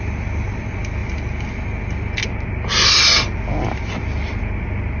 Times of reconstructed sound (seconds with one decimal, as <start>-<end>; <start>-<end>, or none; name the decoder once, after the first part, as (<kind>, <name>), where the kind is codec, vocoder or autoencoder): none